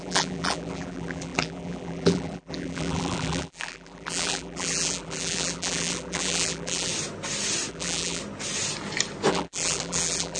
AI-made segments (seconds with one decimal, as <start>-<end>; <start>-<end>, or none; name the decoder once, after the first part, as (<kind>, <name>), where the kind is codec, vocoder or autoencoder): 0.0-6.9 (vocoder, BigVGAN v2); 7.7-8.2; 9.3-10.4